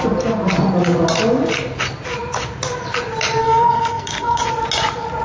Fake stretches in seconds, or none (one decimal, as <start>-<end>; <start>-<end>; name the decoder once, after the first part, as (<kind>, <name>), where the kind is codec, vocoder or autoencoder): 3.4-4.4 (codec, SNAC)